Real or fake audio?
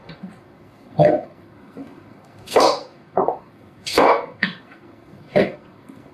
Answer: fake